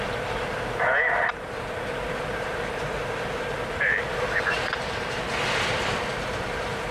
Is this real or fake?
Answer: fake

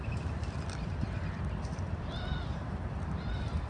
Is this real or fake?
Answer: fake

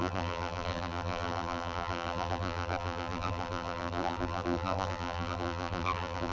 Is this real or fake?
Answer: fake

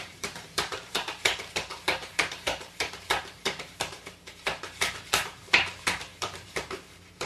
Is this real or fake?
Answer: fake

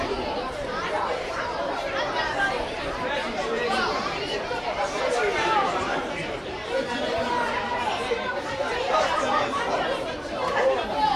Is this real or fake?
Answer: fake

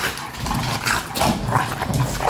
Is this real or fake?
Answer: real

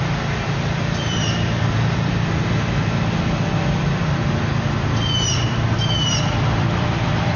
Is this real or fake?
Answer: fake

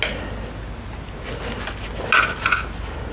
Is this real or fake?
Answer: real